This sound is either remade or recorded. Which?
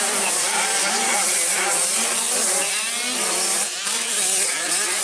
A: remade